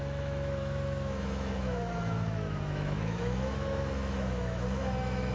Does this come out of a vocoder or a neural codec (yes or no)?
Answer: yes